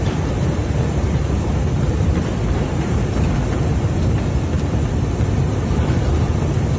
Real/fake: fake